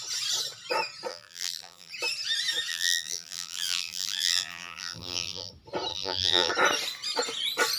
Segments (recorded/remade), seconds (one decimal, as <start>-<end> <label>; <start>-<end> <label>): 0.0-1.1 recorded; 1.1-1.9 remade; 1.9-2.7 recorded; 2.7-5.5 remade; 5.5-5.9 recorded; 5.9-6.5 remade; 6.5-7.8 recorded